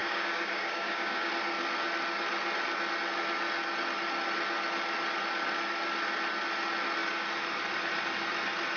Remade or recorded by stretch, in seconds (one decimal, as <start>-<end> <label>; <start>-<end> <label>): 0.0-1.3 remade; 1.3-8.8 recorded